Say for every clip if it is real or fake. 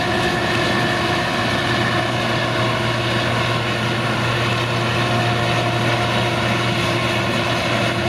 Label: real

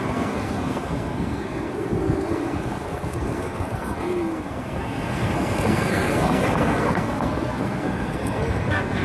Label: fake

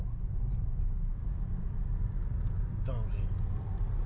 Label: real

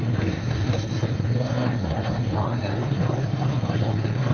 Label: fake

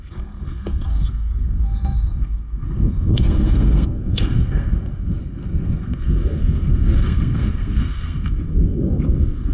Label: fake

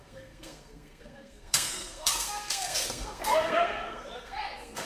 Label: fake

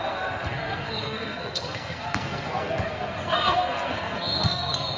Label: fake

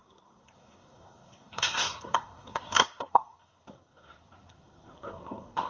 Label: fake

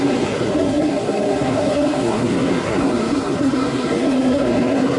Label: fake